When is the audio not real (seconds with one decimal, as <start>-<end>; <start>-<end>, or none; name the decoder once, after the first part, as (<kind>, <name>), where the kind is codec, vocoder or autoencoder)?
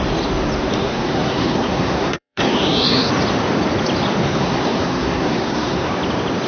0.8-3.1 (codec, SNAC); 4.2-5.9